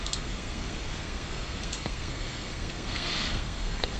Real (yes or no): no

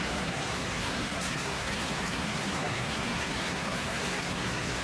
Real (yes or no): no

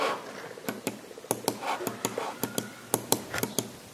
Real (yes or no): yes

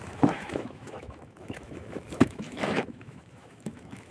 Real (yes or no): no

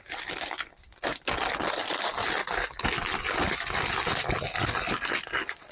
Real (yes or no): yes